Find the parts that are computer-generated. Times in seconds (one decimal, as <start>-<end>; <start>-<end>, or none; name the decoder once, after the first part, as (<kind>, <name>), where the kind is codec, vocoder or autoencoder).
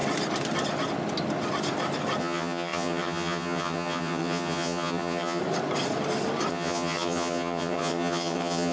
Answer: 2.2-5.4 (vocoder, HiFi-GAN); 6.5-8.7